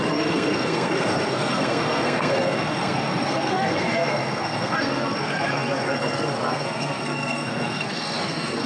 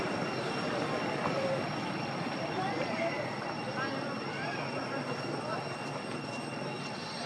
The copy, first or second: first